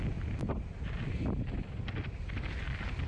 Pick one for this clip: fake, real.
real